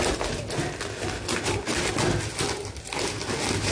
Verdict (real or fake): real